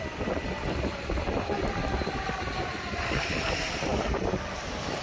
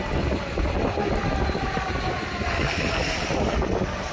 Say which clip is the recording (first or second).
second